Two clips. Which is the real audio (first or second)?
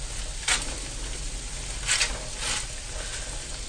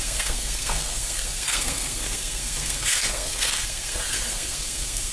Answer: first